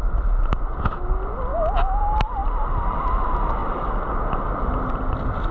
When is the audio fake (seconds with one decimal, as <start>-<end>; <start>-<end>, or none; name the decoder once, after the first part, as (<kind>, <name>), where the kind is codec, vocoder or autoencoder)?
1.5-2.0 (autoencoder, DAC-VAE)